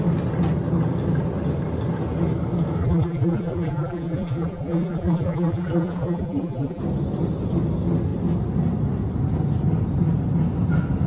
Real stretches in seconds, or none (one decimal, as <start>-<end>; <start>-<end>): 0.0-2.8; 6.8-11.1